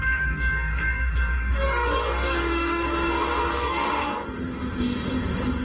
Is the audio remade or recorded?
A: remade